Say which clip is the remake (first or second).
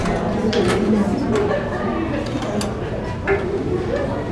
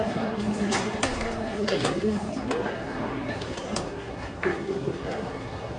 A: second